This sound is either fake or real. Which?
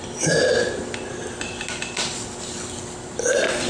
real